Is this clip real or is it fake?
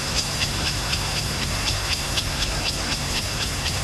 fake